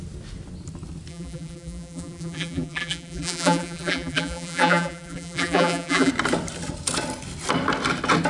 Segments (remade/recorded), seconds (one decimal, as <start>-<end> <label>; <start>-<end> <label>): 0.0-1.1 recorded; 1.1-6.1 remade; 6.1-8.3 recorded